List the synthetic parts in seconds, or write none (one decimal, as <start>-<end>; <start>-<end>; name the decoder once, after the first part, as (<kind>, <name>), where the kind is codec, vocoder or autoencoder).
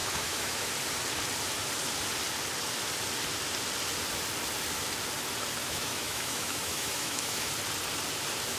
0.0-0.7 (autoencoder, DAC-VAE); 5.6-7.5